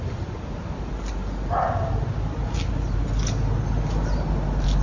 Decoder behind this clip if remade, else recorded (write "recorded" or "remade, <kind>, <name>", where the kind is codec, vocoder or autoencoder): recorded